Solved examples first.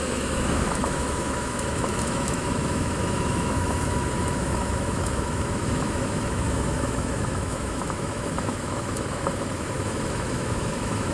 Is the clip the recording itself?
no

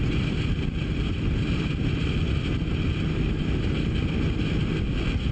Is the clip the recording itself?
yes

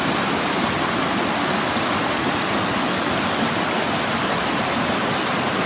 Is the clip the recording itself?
yes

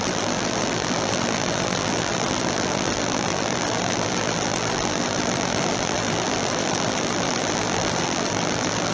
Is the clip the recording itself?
no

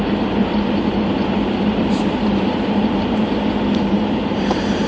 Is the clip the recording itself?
no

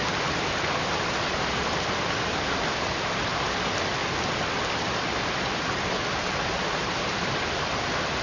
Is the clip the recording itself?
yes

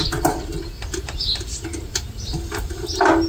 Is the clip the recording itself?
yes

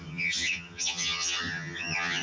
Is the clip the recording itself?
no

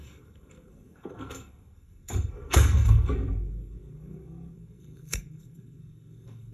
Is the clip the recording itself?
no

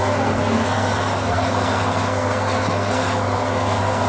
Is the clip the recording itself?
no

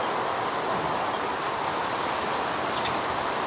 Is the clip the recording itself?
yes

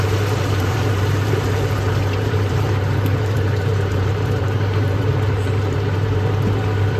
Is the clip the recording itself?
no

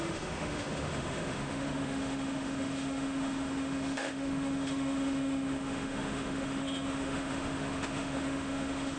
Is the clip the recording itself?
no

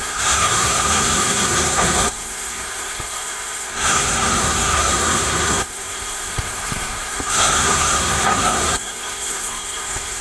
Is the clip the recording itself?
no